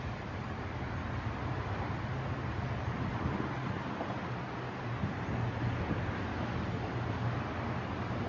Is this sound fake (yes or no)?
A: no